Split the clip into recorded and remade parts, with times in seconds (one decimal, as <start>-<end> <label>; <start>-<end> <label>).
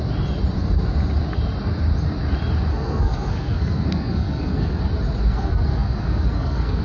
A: 0.0-2.7 recorded; 2.7-4.8 remade; 4.8-5.3 recorded; 5.3-6.8 remade